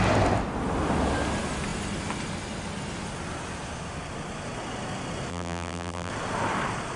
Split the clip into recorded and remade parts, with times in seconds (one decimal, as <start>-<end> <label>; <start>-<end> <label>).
0.0-5.3 recorded; 5.3-6.1 remade; 6.1-7.0 recorded